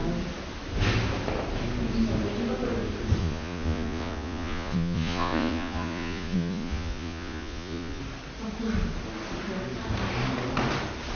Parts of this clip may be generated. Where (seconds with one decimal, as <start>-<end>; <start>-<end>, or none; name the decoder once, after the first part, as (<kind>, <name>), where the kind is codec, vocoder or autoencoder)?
3.2-8.0 (vocoder, Vocos)